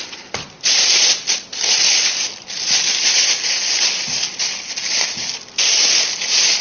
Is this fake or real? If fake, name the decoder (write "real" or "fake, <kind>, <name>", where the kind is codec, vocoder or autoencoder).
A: real